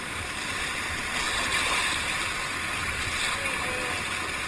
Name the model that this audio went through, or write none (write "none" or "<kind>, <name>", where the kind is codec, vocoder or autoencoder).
none